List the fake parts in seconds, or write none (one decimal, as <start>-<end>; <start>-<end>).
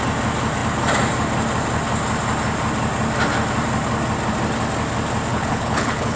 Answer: 5.3-6.2